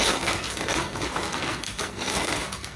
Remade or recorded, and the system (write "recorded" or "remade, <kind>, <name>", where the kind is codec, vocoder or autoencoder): remade, codec, SNAC